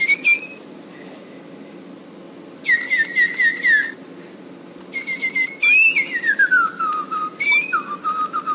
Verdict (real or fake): real